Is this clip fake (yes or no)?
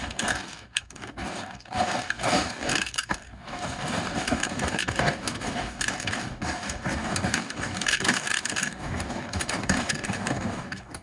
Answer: yes